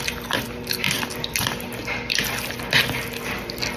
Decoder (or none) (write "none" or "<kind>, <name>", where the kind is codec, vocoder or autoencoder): none